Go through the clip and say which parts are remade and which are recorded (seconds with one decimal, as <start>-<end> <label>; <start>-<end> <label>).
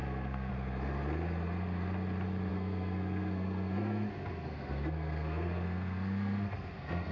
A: 0.0-0.5 remade; 0.5-2.5 recorded; 2.5-7.1 remade